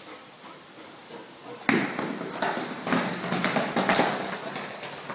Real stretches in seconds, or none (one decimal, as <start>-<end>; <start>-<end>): 0.0-5.1